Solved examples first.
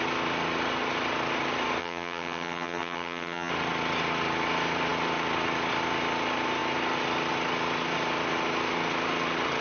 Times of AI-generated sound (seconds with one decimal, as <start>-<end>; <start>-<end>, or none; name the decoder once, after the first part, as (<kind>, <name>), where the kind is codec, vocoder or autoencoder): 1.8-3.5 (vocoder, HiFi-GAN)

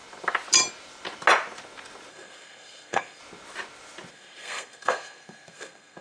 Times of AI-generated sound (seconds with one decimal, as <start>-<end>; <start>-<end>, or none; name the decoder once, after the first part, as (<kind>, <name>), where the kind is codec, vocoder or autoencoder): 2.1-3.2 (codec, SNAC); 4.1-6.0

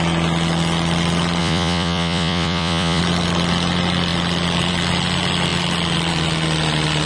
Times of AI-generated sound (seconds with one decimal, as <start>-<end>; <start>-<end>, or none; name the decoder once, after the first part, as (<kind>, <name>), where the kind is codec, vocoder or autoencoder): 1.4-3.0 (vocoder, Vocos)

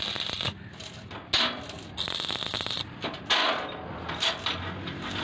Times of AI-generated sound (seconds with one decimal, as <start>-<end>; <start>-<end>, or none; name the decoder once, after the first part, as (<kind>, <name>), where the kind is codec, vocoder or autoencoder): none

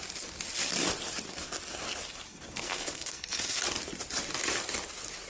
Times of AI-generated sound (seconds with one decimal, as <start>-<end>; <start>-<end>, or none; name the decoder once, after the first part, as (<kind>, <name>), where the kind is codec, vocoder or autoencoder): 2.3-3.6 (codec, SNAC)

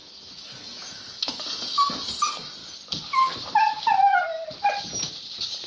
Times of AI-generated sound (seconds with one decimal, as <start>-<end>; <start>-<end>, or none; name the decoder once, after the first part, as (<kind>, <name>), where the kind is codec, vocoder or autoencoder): 0.0-2.1 (autoencoder, DAC-VAE)